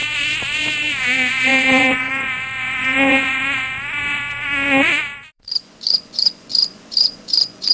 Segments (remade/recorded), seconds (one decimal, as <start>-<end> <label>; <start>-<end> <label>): 0.0-7.7 remade